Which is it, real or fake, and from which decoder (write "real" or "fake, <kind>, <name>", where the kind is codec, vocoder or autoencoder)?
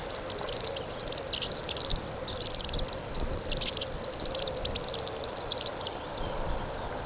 fake, vocoder, BigVGAN v2